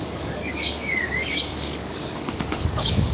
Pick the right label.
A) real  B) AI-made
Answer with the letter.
B